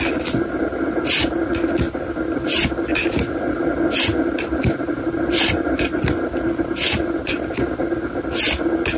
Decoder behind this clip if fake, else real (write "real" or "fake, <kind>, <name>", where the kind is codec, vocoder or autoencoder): real